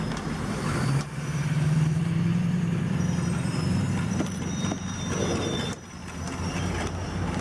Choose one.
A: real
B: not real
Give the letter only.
B